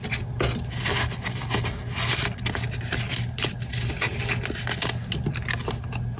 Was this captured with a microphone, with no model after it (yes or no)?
yes